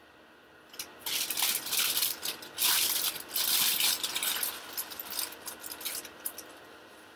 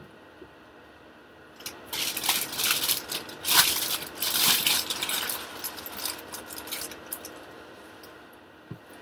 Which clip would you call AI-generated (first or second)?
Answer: second